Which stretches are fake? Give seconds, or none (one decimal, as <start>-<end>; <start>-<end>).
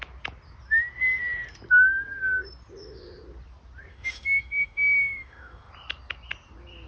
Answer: 3.9-5.7